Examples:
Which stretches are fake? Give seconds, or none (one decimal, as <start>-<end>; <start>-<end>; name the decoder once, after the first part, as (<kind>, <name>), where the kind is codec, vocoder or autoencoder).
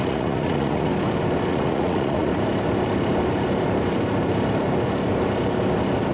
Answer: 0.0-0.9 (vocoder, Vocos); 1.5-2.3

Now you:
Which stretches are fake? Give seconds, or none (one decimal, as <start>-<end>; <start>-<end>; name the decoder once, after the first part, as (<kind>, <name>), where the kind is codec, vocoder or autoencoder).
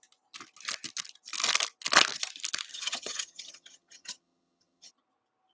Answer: 2.7-4.9 (vocoder, HiFi-GAN)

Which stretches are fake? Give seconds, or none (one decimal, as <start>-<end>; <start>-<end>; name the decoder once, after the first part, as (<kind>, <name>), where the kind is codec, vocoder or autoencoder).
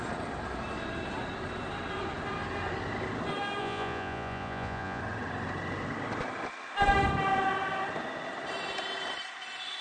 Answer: 3.6-5.0 (vocoder, Vocos)